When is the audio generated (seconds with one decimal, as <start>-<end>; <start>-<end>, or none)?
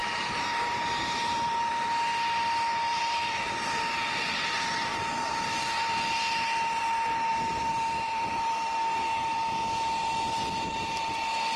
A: 0.0-1.7; 2.9-3.5; 7.3-8.5